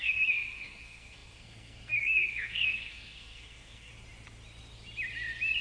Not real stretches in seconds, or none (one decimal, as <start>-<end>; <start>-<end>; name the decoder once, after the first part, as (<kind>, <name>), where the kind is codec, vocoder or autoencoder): 0.0-3.9 (codec, SNAC)